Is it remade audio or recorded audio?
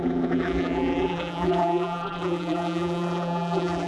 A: remade